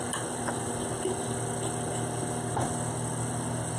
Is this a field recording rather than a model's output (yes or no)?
yes